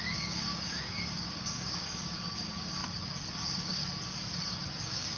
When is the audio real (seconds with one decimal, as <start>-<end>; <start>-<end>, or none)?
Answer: 2.8-3.3; 3.8-4.7